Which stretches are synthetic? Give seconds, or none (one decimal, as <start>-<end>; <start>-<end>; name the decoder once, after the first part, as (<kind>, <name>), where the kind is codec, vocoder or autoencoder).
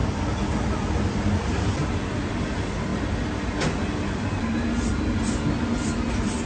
none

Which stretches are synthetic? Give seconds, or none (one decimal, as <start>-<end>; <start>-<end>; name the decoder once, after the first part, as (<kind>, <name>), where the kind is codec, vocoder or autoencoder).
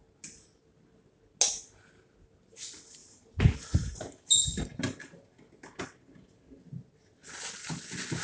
none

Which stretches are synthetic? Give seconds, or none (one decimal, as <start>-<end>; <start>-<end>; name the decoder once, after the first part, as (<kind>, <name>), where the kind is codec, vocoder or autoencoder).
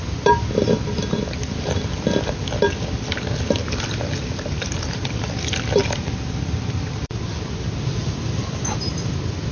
3.6-5.1 (vocoder, BigVGAN v2); 5.8-8.0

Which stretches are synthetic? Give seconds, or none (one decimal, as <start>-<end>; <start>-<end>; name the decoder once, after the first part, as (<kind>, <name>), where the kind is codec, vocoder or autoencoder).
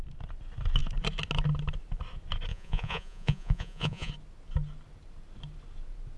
2.5-4.1 (vocoder, Vocos)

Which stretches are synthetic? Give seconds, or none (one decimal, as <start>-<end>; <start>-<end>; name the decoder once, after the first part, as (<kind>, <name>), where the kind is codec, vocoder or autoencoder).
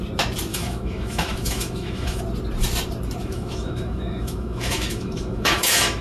0.5-2.2 (autoencoder, DAC-VAE); 3.2-6.0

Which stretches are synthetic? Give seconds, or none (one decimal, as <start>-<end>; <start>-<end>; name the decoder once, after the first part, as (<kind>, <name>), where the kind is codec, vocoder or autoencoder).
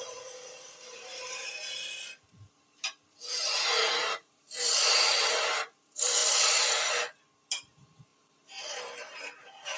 0.0-6.2 (vocoder, BigVGAN v2); 7.5-9.8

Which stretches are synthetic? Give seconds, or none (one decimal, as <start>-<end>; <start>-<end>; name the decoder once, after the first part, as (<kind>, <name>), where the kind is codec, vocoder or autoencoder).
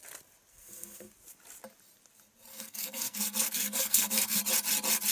0.5-1.1 (codec, SNAC); 2.5-4.4